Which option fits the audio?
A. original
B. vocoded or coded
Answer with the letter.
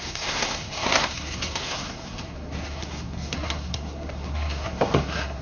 B